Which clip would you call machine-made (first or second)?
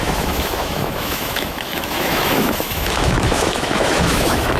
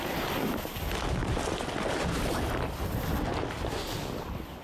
first